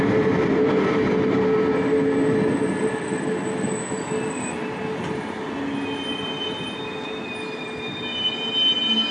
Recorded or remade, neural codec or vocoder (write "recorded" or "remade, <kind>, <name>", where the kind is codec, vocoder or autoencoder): recorded